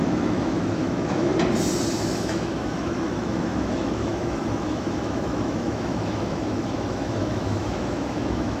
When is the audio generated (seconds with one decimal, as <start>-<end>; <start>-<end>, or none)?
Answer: 0.0-1.3; 2.0-8.6